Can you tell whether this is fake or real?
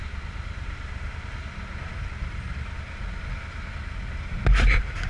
real